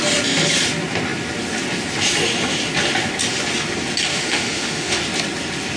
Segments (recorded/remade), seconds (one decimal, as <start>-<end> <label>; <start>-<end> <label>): 0.0-4.1 recorded; 4.1-5.0 remade; 5.0-5.8 recorded